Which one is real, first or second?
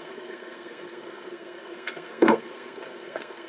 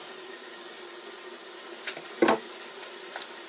second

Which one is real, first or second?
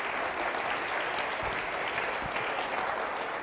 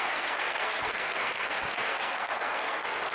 first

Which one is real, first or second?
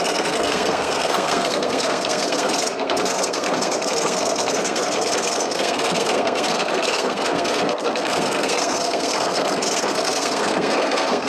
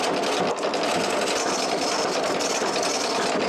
second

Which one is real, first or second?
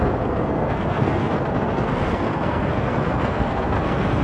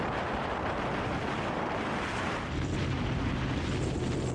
second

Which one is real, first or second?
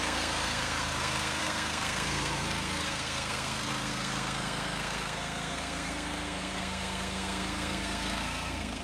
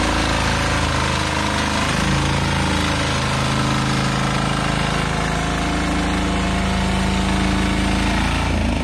second